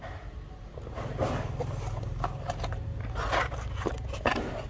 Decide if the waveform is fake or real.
real